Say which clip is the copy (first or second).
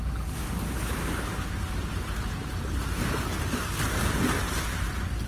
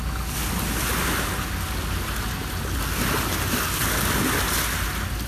first